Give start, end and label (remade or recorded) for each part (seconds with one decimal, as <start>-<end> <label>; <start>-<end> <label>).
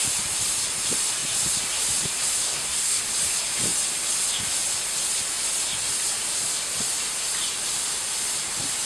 0.0-2.4 recorded; 2.4-3.0 remade; 3.0-8.9 recorded